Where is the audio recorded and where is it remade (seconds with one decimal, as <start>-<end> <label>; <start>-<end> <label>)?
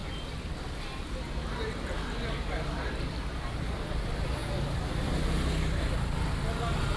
0.0-7.0 recorded